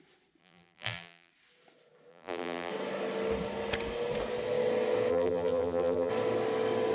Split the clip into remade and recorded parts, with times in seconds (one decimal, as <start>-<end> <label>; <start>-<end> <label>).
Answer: 0.0-0.4 recorded; 0.4-1.3 remade; 1.3-2.1 recorded; 2.1-2.7 remade; 2.7-5.1 recorded; 5.1-6.1 remade; 6.1-6.9 recorded